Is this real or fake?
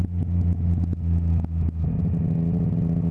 real